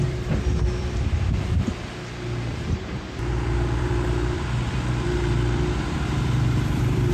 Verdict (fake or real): fake